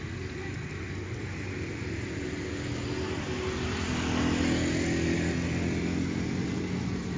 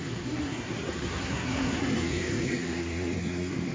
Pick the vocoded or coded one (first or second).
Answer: second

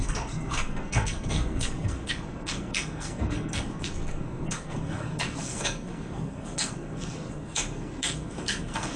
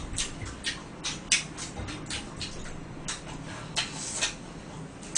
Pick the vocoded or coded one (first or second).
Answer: first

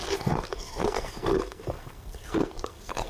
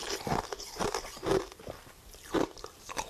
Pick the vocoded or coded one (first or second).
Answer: first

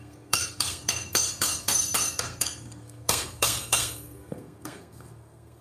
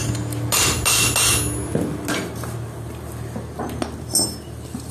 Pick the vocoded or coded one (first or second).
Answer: first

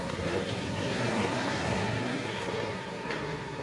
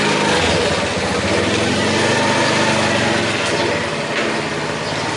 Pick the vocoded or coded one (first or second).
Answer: first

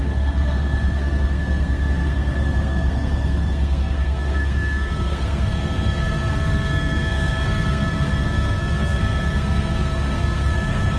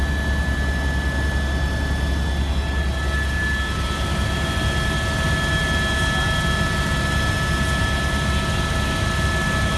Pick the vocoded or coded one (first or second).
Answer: first